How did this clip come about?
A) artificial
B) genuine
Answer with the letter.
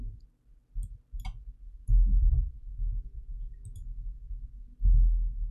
B